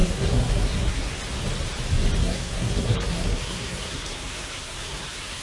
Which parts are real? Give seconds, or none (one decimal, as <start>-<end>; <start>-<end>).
1.2-2.2